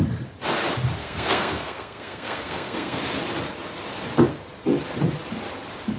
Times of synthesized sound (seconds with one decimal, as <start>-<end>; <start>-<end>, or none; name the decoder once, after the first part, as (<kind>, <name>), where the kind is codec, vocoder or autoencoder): 1.0-3.0 (codec, SNAC)